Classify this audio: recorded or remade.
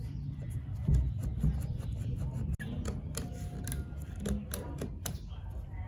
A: recorded